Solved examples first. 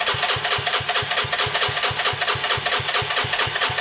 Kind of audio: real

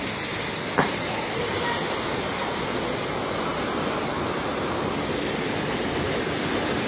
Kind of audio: real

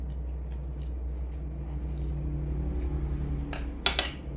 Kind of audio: real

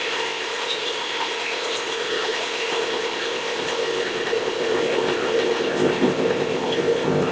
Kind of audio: fake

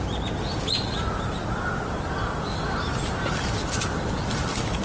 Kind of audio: real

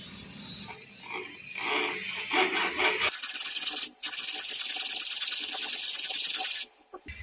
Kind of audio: real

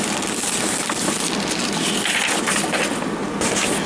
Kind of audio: real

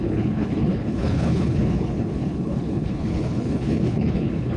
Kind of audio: fake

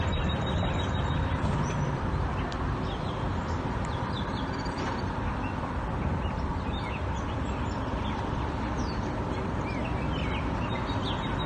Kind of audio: fake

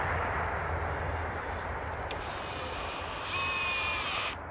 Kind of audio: fake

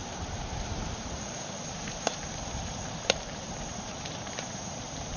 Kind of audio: fake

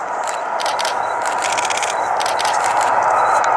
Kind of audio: real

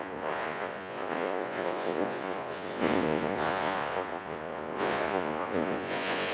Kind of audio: fake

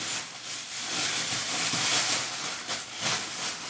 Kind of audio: real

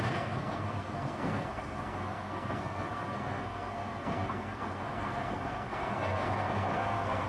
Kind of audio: fake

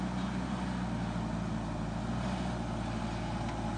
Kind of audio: real